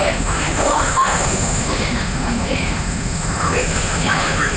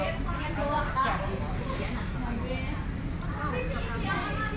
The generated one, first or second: first